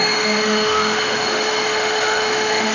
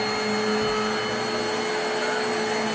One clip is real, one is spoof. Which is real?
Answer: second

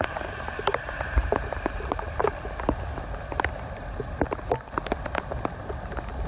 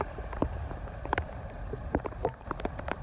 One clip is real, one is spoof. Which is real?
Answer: first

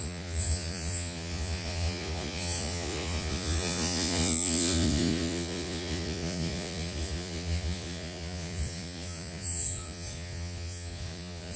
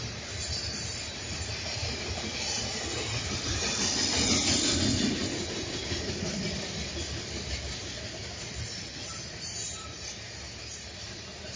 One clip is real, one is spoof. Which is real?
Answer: second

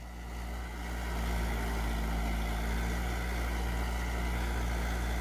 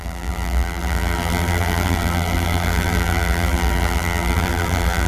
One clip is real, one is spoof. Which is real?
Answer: first